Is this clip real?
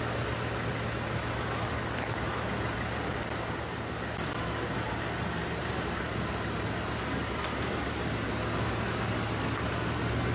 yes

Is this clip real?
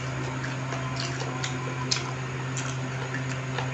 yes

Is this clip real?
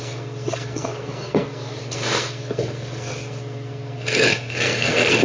no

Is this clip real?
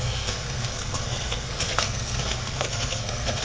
no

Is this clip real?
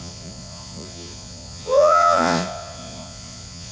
no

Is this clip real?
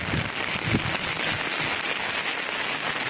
yes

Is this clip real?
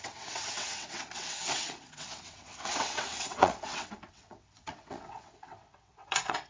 no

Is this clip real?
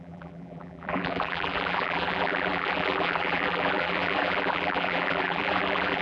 no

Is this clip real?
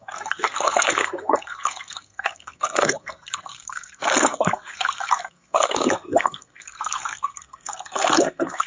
no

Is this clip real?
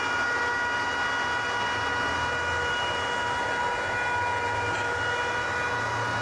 yes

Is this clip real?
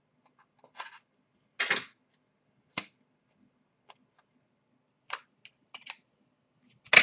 yes